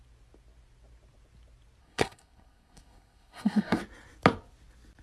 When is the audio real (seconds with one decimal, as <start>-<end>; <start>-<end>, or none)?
0.0-1.8; 3.8-5.0